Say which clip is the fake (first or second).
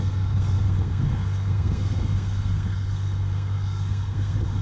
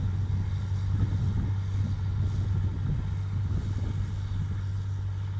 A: first